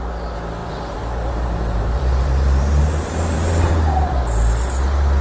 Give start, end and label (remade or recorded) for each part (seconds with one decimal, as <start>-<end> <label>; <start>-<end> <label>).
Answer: 0.0-0.6 recorded; 0.6-3.7 remade; 3.7-5.2 recorded